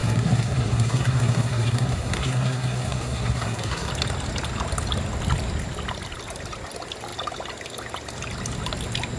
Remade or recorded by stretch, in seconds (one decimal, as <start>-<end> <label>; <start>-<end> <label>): 0.0-3.9 remade; 3.9-9.2 recorded